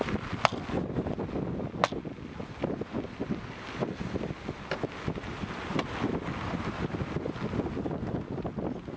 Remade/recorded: recorded